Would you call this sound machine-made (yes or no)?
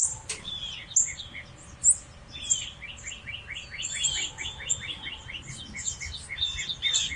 no